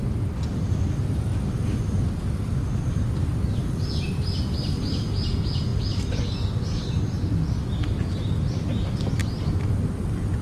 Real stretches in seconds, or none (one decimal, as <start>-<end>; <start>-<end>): 0.0-10.4